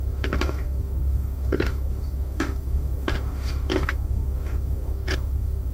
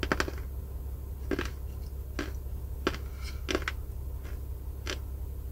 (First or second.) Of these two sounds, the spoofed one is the first